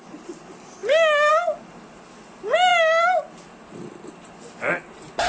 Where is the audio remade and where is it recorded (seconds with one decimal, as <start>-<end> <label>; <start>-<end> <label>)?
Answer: 0.0-5.3 recorded